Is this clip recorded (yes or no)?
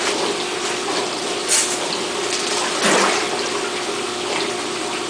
yes